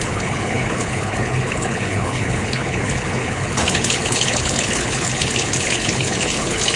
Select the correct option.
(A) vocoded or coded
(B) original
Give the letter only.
A